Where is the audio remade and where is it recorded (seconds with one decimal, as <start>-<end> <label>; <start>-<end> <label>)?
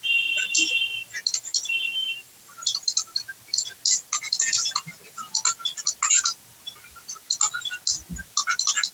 0.0-2.0 recorded; 2.0-3.2 remade; 3.2-8.9 recorded